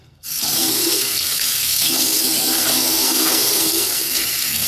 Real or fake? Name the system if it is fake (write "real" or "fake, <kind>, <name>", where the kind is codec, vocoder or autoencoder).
fake, codec, SNAC